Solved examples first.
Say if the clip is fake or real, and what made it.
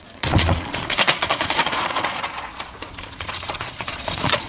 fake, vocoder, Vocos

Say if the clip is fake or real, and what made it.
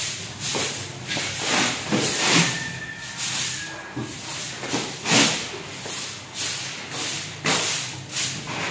real